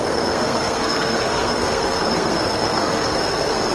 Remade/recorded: remade